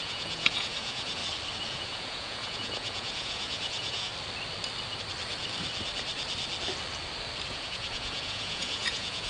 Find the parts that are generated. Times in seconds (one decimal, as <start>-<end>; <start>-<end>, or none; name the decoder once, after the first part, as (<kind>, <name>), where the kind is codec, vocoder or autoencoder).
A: 0.0-1.2 (vocoder, Vocos); 1.7-4.1; 7.5-9.3